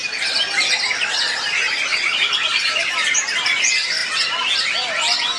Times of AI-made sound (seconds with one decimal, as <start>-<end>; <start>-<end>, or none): none